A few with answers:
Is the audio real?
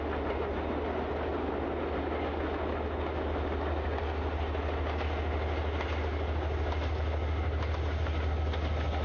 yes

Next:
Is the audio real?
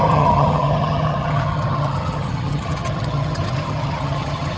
no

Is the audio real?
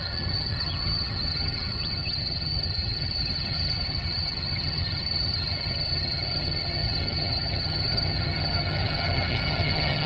no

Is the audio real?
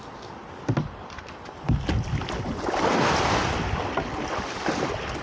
yes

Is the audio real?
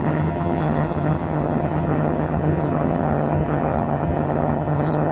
no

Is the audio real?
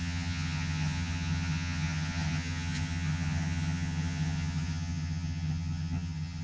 no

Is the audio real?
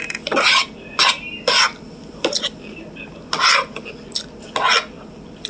yes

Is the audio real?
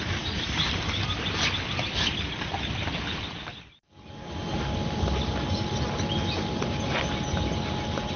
yes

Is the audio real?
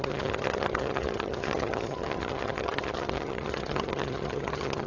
no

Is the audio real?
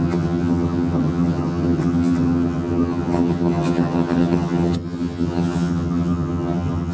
no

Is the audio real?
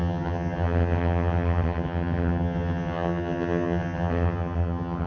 no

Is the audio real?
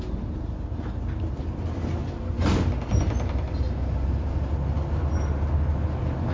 yes